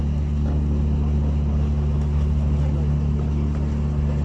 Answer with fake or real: real